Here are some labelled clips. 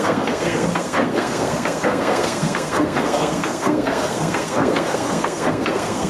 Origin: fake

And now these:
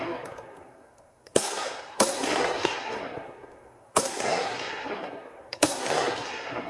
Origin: fake